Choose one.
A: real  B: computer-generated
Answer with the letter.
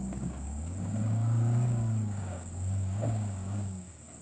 B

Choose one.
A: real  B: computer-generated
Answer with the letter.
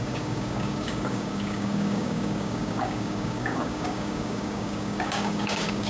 B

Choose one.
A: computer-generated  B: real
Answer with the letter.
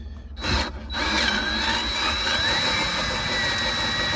B